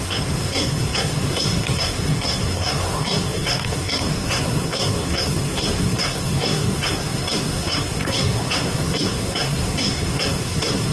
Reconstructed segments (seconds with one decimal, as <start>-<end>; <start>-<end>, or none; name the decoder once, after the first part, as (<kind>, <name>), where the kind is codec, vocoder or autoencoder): 0.0-10.9 (codec, SNAC)